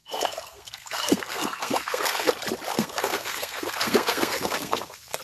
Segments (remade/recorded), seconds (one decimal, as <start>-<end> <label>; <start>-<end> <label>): 0.0-2.3 remade; 2.3-2.7 recorded; 2.7-5.2 remade